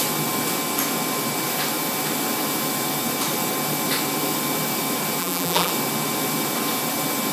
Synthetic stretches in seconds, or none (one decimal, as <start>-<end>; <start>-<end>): 5.2-5.7